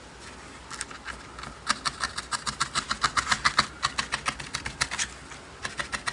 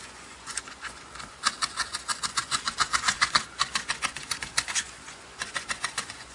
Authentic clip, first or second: first